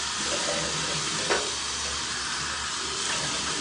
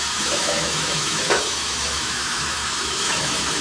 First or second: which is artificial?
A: second